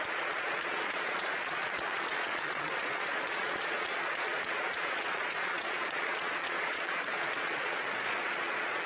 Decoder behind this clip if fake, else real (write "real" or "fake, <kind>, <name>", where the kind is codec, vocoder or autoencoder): fake, vocoder, Vocos